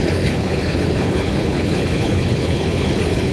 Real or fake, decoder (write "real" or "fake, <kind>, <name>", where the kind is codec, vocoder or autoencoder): fake, codec, HILCodec